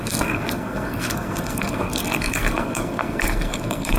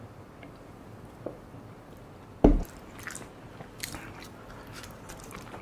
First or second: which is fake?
first